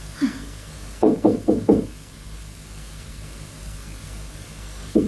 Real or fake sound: fake